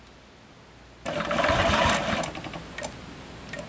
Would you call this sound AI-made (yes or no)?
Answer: no